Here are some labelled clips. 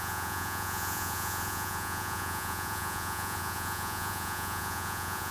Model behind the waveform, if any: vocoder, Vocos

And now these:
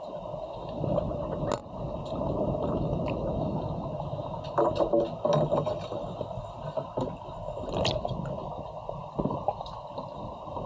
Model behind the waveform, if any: none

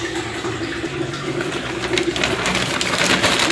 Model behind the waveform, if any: vocoder, BigVGAN v2